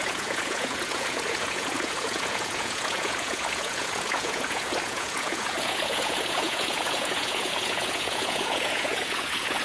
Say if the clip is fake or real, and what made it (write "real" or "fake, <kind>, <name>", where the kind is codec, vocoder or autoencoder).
fake, vocoder, Vocos